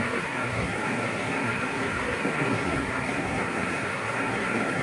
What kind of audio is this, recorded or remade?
remade